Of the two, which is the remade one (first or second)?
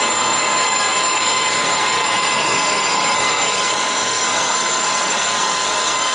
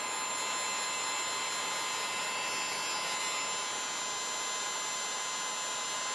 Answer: first